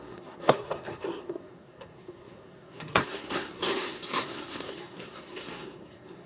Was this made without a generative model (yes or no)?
no